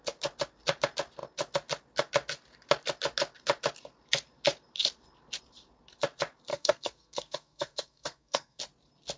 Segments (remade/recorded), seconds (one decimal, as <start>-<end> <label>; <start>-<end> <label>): 0.0-6.5 recorded; 6.5-8.6 remade; 8.6-9.2 recorded